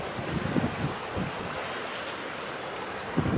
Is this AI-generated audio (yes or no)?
no